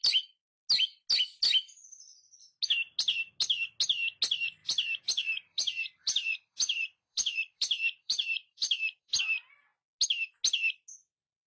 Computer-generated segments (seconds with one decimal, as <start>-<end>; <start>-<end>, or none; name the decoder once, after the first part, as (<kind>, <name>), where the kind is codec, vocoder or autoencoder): 4.6-9.2 (vocoder, BigVGAN v2)